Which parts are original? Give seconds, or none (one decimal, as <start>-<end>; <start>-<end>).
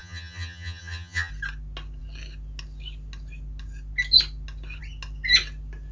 1.3-5.9